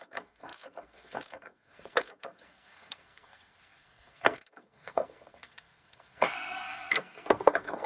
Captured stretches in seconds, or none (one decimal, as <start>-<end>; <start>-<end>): none